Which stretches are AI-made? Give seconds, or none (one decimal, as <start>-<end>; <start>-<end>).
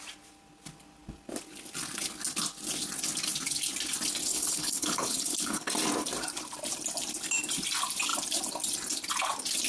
4.3-5.7